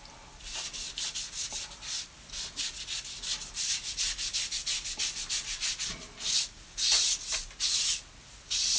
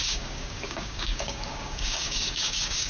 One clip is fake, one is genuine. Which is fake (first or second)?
second